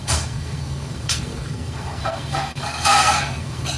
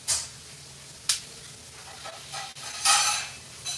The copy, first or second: first